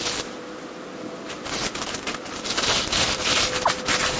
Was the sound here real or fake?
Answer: real